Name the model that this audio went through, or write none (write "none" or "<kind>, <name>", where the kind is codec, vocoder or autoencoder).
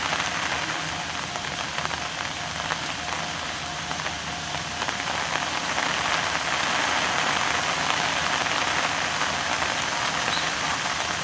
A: none